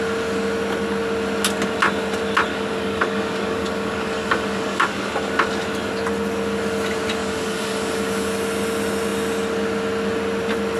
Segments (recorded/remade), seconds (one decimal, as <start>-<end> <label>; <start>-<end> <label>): 0.0-2.5 recorded; 2.5-5.1 remade; 5.1-7.2 recorded; 7.2-8.3 remade; 8.3-10.8 recorded